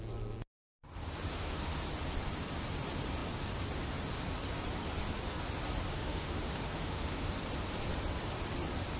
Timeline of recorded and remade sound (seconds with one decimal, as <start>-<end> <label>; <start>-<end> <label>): 0.0-1.3 recorded; 1.3-1.8 remade; 1.8-5.9 recorded; 5.9-7.3 remade; 7.3-9.0 recorded